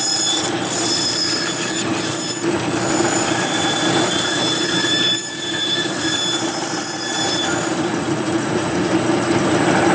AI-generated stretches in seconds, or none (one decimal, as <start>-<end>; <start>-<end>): 7.9-8.9